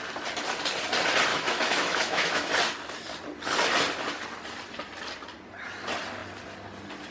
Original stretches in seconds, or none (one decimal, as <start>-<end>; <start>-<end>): 0.0-1.3; 2.5-7.1